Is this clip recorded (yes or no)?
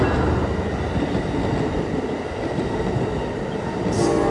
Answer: yes